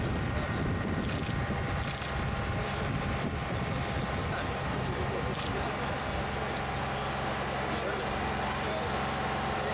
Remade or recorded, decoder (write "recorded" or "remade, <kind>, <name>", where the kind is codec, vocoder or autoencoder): recorded